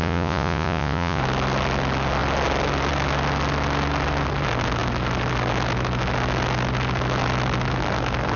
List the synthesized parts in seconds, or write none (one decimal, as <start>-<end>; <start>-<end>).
0.0-1.2